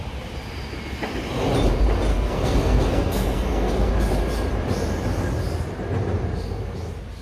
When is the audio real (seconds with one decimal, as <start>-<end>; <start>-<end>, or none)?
0.0-2.1; 3.9-7.2